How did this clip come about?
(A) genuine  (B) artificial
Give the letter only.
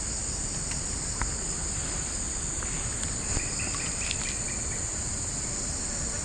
A